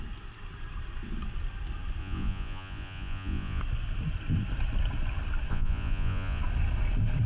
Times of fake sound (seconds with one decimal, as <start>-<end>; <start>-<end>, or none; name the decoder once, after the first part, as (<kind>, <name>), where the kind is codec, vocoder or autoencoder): 2.0-3.6 (vocoder, Vocos); 5.5-6.4